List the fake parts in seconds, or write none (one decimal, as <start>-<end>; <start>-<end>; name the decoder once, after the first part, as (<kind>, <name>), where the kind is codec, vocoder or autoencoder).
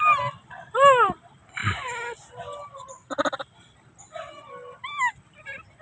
none